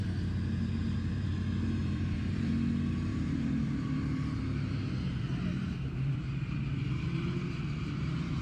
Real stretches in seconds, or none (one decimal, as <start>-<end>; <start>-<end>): 0.0-0.8; 1.3-1.8; 2.5-3.1